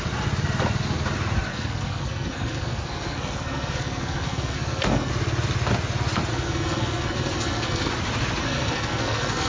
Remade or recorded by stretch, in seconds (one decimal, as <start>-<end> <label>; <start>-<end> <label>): 0.0-1.5 recorded; 1.5-5.1 remade; 5.1-6.3 recorded; 6.3-7.9 remade; 7.9-8.4 recorded; 8.4-9.5 remade